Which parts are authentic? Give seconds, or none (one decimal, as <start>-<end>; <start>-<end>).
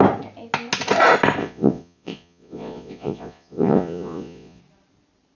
0.0-1.4; 4.6-5.3